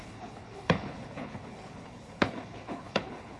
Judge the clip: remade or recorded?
remade